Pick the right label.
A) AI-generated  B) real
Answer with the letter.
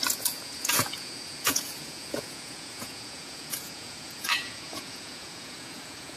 A